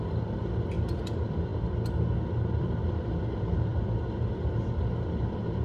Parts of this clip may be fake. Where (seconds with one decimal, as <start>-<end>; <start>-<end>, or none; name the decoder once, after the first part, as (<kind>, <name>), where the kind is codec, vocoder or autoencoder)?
0.0-1.5 (vocoder, BigVGAN v2); 2.6-5.6